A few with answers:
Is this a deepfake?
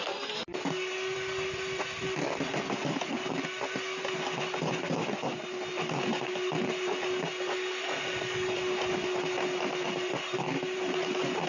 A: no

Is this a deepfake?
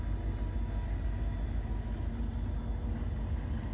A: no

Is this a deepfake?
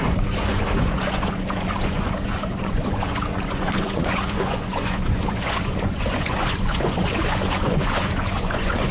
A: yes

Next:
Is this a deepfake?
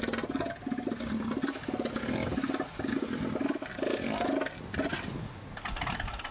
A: no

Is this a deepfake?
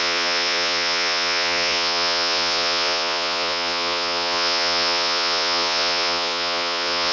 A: yes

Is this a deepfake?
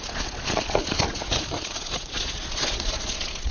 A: yes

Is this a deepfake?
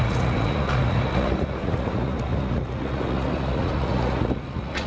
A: yes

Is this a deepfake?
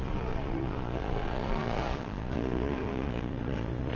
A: yes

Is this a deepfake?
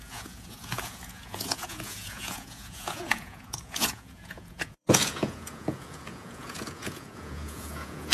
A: yes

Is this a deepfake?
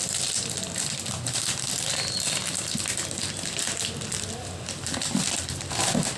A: no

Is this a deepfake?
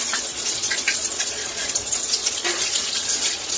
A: yes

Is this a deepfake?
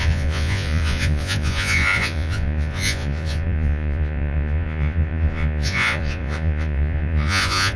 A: yes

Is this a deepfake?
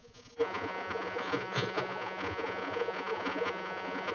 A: yes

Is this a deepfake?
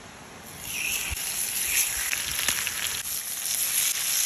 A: no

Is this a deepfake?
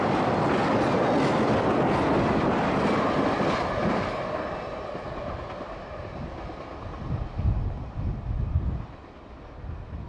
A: no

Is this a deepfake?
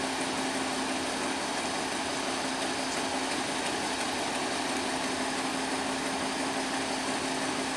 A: no